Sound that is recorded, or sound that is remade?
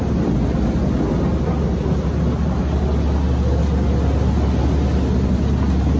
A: recorded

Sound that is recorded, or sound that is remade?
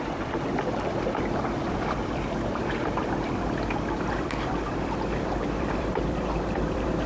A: remade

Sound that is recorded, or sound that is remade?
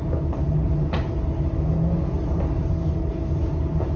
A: recorded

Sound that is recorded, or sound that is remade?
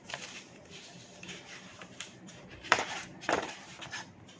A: remade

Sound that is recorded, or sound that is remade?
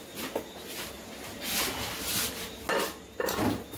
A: recorded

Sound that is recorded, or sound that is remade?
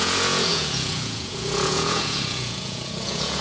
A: remade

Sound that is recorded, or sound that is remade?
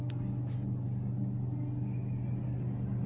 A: recorded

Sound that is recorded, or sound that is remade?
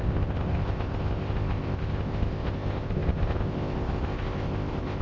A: remade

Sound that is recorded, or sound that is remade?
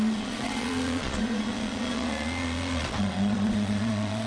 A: remade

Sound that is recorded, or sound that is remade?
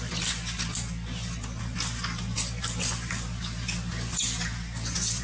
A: recorded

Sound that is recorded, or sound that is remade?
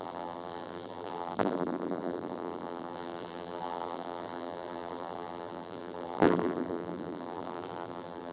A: remade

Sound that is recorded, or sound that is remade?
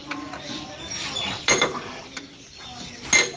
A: recorded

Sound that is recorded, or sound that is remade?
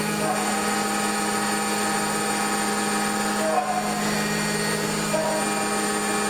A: recorded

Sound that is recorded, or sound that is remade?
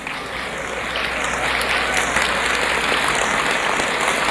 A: recorded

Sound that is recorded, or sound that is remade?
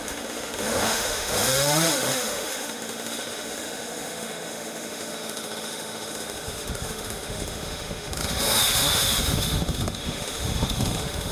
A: remade